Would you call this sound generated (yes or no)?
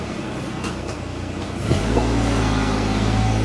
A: yes